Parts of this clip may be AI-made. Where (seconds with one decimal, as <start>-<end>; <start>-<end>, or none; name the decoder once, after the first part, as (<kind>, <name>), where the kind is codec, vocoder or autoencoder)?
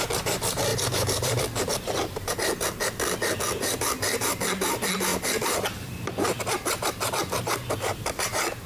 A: 0.7-2.3 (vocoder, BigVGAN v2); 5.1-8.7